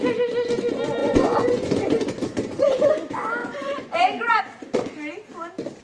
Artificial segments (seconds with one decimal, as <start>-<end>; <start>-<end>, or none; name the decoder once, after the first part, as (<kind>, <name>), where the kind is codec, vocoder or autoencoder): 1.0-2.9 (vocoder, Vocos); 3.4-4.4